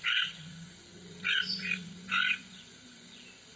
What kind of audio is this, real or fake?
fake